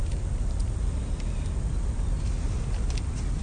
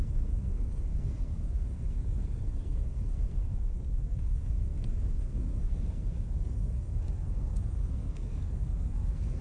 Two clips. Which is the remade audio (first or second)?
second